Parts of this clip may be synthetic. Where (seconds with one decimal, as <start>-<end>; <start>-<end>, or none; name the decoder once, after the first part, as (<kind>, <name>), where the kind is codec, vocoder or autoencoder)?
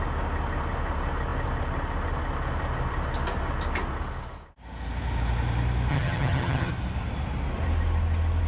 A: 5.9-6.7 (vocoder, HiFi-GAN)